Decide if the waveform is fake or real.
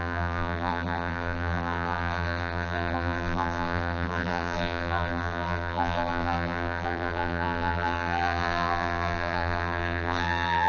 fake